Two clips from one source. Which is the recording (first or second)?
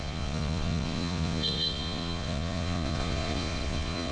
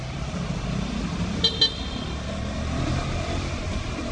second